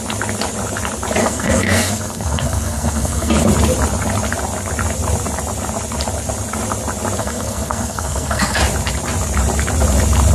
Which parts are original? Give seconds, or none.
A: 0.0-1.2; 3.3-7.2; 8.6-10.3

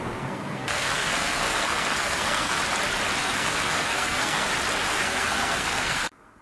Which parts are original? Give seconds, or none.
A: 2.6-3.2; 4.5-4.9